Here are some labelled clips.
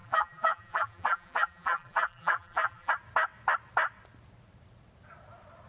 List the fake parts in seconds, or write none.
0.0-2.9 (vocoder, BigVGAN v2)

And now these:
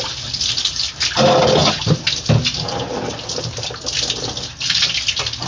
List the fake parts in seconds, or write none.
none

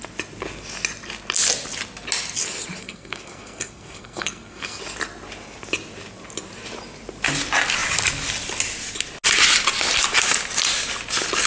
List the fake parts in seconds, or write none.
2.8-4.8 (codec, SNAC)

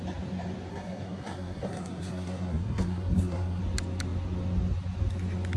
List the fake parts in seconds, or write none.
0.7-3.6 (codec, SNAC)

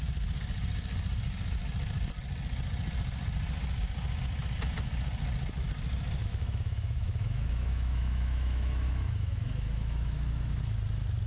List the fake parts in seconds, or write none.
6.2-10.6 (autoencoder, DAC-VAE)

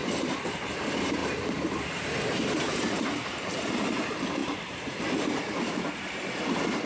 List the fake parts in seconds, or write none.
0.6-6.9 (vocoder, BigVGAN v2)

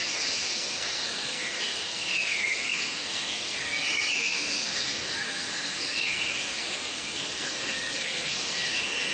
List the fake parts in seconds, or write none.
0.0-9.1 (codec, SNAC)